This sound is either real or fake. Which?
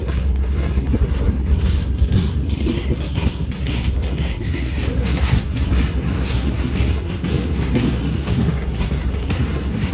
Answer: fake